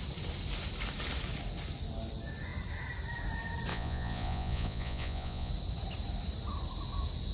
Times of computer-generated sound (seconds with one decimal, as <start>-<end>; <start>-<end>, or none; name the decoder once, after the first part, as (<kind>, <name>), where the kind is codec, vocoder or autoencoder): 3.7-5.5 (vocoder, Vocos)

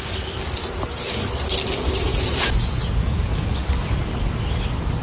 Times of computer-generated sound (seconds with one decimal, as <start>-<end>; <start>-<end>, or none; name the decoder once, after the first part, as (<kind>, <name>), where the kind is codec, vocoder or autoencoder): 2.1-3.3 (vocoder, Vocos)

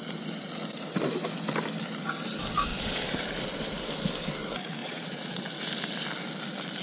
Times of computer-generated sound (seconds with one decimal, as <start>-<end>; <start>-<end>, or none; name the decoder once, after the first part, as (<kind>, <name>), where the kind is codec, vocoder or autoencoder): 2.7-3.2 (vocoder, Vocos); 4.8-5.4

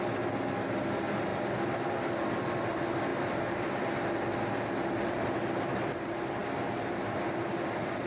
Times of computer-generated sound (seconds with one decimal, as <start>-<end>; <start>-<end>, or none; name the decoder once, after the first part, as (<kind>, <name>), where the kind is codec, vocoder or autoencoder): none

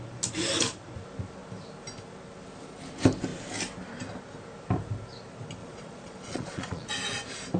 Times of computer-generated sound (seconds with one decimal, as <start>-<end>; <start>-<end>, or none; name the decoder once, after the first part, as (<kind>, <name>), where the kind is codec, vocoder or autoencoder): 5.6-6.9 (vocoder, Vocos)

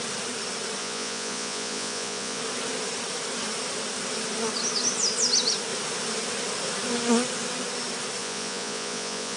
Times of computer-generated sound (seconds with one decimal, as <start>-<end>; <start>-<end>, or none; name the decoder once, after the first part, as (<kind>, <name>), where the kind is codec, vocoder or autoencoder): 0.8-2.4 (vocoder, Vocos); 8.2-9.4

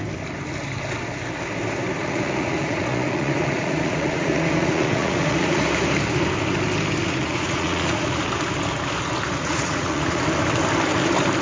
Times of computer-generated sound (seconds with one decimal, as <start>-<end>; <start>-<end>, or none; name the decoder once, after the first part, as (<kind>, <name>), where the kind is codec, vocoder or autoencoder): 2.0-5.6 (vocoder, Vocos); 7.2-8.3; 9.4-10.2